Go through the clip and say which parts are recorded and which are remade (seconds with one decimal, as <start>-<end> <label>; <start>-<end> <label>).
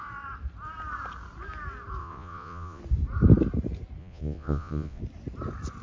0.0-2.0 recorded; 2.0-2.8 remade; 2.8-4.0 recorded; 4.0-5.0 remade; 5.0-5.8 recorded